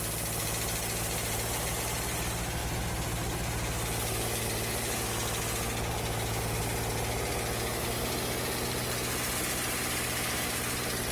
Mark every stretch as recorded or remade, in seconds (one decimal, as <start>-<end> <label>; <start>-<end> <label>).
0.0-11.1 recorded